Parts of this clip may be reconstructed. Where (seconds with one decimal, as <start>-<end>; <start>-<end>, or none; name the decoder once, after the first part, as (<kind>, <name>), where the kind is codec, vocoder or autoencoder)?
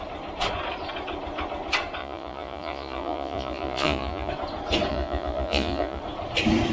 2.0-4.3 (vocoder, Vocos); 4.9-6.0